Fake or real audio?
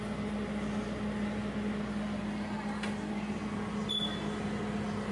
real